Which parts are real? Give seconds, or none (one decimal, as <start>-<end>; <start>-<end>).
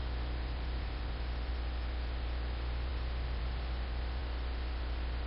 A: 0.0-5.3